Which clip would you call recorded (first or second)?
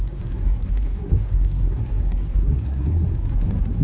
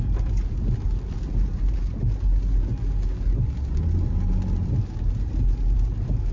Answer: second